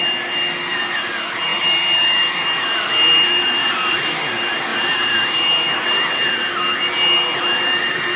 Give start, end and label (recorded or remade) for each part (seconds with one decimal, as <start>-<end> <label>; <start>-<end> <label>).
0.0-3.6 recorded; 3.6-4.2 remade; 4.2-4.7 recorded; 4.7-5.4 remade; 5.4-8.2 recorded